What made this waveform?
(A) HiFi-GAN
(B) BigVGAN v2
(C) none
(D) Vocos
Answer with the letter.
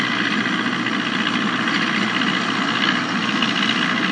C